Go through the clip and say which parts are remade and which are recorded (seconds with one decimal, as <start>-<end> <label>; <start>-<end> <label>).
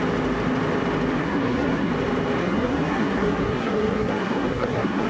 0.0-1.1 recorded; 1.1-1.9 remade; 1.9-2.4 recorded; 2.4-5.1 remade